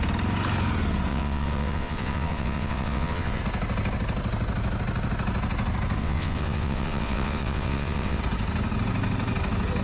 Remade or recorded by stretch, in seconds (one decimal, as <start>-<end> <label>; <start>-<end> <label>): 0.0-1.1 recorded; 1.1-3.4 remade; 3.4-6.0 recorded; 6.0-8.2 remade; 8.2-9.8 recorded